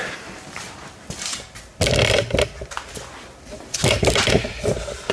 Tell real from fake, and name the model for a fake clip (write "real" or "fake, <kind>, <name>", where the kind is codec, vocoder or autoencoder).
real